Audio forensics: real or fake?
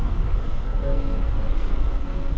fake